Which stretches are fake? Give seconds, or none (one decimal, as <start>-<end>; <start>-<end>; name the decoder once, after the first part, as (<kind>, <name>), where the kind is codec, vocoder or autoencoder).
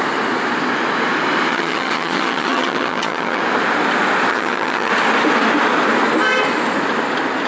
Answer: 1.5-3.4 (vocoder, HiFi-GAN); 4.3-4.9